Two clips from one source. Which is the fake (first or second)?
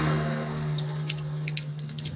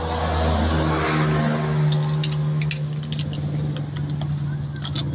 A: first